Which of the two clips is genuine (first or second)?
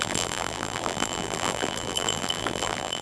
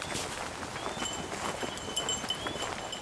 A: second